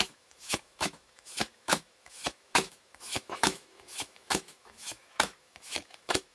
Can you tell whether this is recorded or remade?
remade